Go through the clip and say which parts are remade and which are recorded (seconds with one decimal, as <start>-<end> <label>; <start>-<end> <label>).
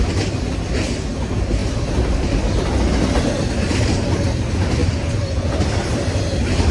0.0-6.7 recorded